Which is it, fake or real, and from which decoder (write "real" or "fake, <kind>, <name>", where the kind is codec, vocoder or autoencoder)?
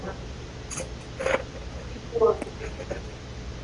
real